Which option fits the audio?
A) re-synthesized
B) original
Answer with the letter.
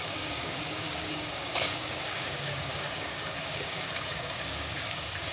A